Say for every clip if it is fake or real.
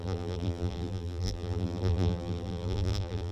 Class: fake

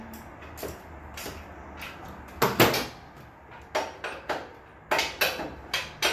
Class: real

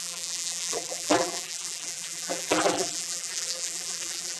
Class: fake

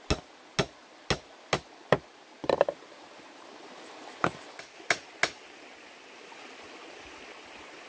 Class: real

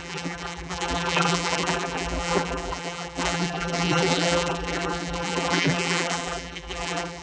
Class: fake